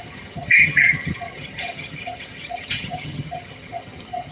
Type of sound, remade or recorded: remade